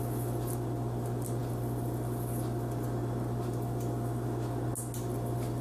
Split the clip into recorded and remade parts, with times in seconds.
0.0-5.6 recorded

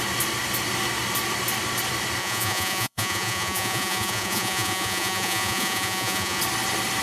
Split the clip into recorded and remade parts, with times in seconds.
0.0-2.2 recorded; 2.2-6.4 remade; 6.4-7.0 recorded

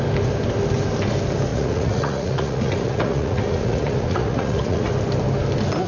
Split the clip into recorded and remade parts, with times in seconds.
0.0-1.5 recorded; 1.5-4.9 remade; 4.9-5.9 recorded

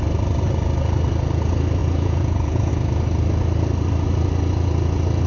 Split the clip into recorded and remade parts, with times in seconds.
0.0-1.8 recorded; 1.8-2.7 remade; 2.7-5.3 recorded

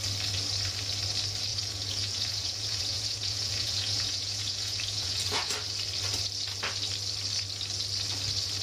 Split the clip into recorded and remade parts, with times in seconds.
0.0-1.5 recorded; 1.5-5.5 remade; 5.5-8.6 recorded

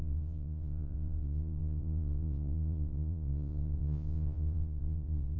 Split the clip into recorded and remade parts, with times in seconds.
0.0-5.4 remade